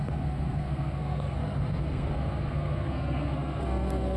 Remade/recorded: remade